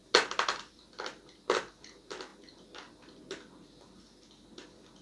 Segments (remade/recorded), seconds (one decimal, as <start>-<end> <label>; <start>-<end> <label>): 0.0-5.0 recorded